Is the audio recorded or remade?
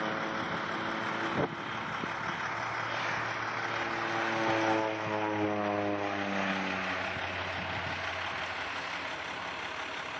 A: recorded